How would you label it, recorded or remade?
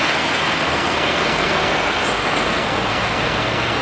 remade